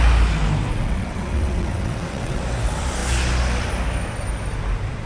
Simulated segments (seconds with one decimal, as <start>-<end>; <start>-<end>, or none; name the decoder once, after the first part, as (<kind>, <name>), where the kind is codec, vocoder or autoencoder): 0.7-2.4 (vocoder, WaveNeXt)